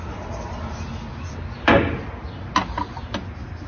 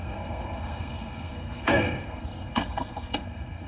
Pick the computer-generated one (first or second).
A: second